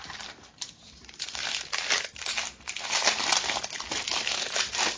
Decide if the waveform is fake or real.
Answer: fake